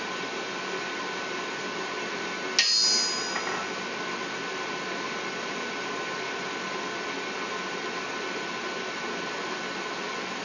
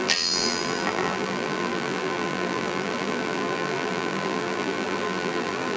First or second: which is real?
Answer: first